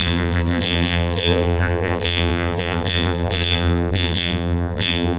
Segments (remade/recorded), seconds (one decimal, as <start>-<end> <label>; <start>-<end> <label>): 0.0-5.2 remade